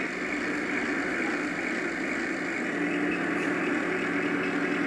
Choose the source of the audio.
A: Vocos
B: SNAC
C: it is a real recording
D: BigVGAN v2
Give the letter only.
C